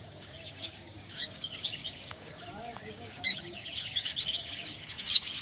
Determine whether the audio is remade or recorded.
remade